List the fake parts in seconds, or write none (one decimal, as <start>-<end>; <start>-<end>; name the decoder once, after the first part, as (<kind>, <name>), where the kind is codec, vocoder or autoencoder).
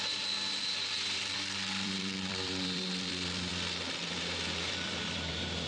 0.0-3.5 (vocoder, BigVGAN v2); 4.0-5.7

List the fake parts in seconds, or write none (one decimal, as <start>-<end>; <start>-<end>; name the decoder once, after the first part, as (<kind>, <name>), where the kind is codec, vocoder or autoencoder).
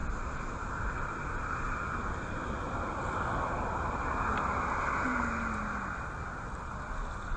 none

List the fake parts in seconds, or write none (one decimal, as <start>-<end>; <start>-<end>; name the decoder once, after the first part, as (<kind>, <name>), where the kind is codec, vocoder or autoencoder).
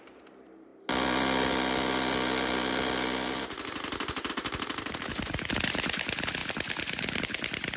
0.0-0.7 (vocoder, BigVGAN v2); 4.3-6.4; 7.2-7.8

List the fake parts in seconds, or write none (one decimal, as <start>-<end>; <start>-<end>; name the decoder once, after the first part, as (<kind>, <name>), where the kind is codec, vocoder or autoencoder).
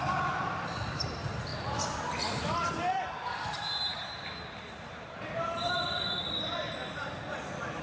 0.0-1.5 (vocoder, BigVGAN v2); 2.3-7.8